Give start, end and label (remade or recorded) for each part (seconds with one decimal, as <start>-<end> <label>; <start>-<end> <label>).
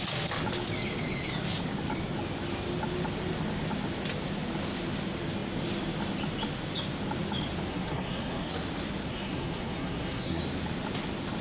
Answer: 0.0-7.7 recorded; 7.7-8.5 remade; 8.5-9.1 recorded; 9.1-10.4 remade; 10.4-11.4 recorded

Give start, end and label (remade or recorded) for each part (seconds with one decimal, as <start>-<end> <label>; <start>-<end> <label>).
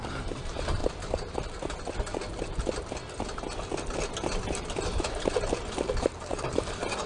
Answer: 0.0-0.8 remade; 0.8-5.0 recorded; 5.0-7.1 remade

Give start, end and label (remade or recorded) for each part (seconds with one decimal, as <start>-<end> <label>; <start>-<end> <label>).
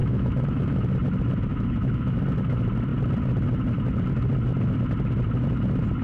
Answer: 0.0-0.9 remade; 0.9-1.5 recorded; 1.5-2.2 remade; 2.2-6.0 recorded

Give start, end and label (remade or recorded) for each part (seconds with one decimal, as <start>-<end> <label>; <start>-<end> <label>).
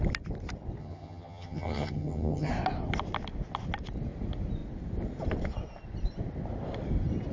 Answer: 0.0-0.8 recorded; 0.8-2.5 remade; 2.5-7.3 recorded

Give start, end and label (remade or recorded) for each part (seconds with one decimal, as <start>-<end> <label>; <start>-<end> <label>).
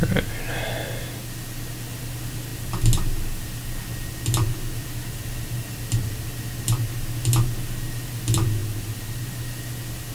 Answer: 0.0-10.1 recorded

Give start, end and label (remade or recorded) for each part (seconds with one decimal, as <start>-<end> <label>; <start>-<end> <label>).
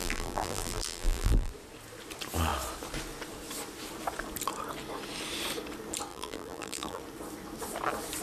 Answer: 0.0-1.5 remade; 1.5-6.1 recorded; 6.1-7.0 remade; 7.0-8.2 recorded